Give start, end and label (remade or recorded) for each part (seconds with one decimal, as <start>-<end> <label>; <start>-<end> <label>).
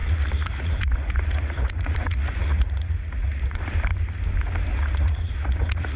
0.0-3.6 remade; 3.6-4.7 recorded; 4.7-6.0 remade